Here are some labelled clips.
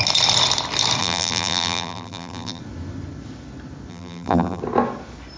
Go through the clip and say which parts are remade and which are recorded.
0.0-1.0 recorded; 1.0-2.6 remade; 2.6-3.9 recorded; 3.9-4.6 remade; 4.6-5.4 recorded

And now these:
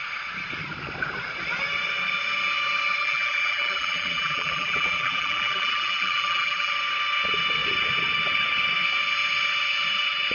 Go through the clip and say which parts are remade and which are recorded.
0.0-3.0 recorded; 3.0-6.7 remade; 6.7-10.3 recorded